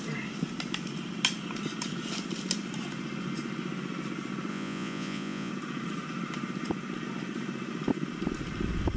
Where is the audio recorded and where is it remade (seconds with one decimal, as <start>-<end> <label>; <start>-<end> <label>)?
0.0-4.5 recorded; 4.5-5.5 remade; 5.5-9.0 recorded

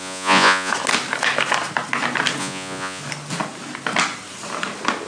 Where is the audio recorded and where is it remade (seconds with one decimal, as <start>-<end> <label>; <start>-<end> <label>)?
0.0-0.7 remade; 0.7-2.4 recorded; 2.4-3.0 remade; 3.0-5.1 recorded

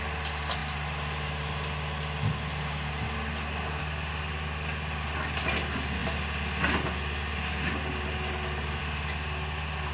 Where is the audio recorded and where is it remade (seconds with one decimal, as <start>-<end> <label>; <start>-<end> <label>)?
0.0-9.9 recorded

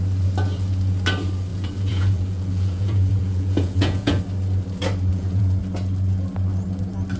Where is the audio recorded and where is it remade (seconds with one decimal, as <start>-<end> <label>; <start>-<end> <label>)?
0.0-1.5 recorded; 1.5-4.2 remade; 4.2-5.1 recorded; 5.1-5.6 remade; 5.6-7.2 recorded

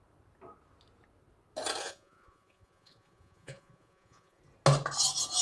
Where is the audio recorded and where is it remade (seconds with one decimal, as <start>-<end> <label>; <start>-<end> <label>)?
0.0-1.8 recorded; 1.8-4.4 remade; 4.4-5.4 recorded